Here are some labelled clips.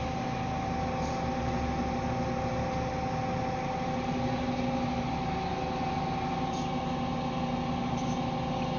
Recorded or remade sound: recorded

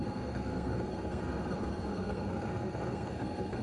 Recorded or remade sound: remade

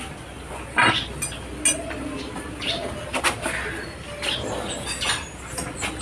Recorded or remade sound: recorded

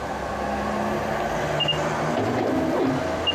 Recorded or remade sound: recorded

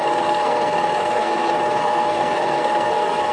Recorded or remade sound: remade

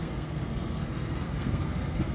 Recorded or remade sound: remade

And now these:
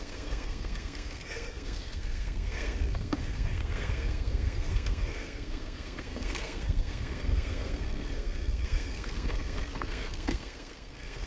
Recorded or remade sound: remade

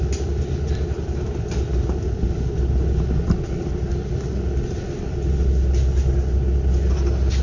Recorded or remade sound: recorded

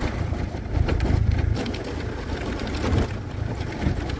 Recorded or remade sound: recorded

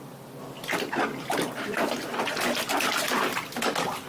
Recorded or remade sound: recorded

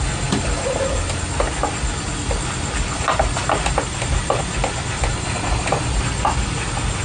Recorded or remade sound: recorded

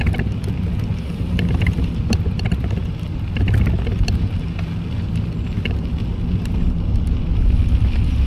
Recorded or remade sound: recorded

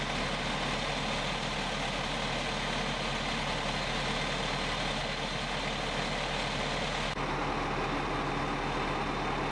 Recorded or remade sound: recorded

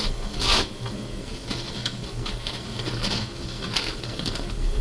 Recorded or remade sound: remade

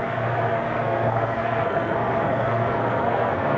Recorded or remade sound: remade